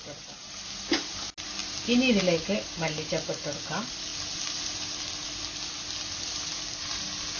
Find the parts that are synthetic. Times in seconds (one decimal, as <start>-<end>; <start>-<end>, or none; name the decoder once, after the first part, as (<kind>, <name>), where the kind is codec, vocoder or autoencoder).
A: none